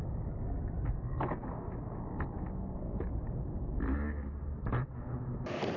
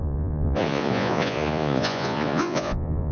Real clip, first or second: first